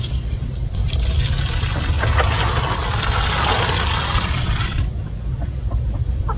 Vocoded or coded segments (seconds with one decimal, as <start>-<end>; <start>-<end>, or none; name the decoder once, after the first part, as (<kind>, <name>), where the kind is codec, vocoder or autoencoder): 0.0-0.8 (vocoder, Vocos); 4.4-6.4